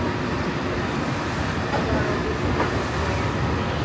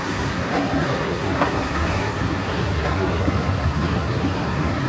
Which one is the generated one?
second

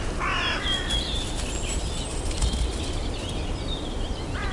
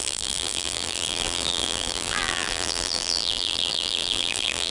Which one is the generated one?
second